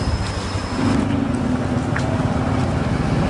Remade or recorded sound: recorded